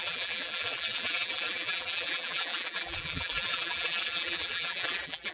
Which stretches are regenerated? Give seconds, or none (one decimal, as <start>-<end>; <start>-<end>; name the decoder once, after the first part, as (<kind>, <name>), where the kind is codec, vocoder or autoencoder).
0.0-5.3 (vocoder, BigVGAN v2)